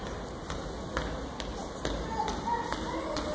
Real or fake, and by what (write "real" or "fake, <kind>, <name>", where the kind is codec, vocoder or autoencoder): real